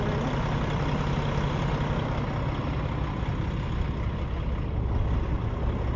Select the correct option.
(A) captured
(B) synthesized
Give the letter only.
A